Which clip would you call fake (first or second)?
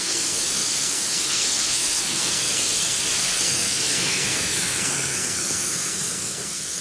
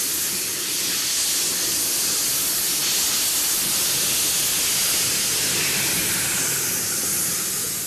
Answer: first